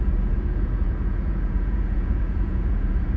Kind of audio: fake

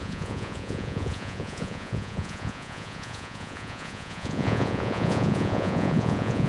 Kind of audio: fake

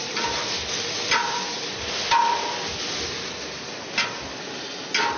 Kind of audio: real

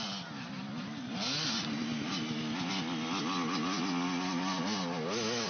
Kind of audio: real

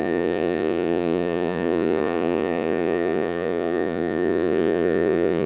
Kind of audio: fake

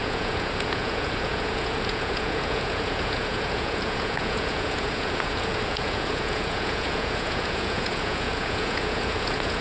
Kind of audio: fake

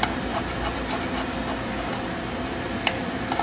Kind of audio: real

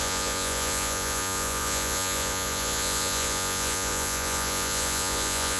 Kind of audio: fake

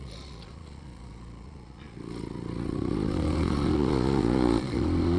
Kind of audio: fake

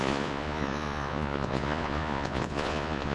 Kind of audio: fake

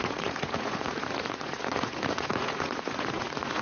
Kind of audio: fake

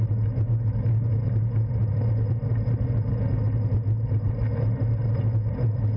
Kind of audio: real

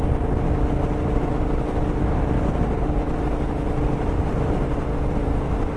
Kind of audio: real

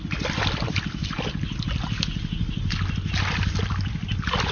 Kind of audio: real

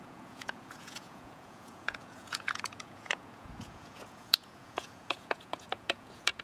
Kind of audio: fake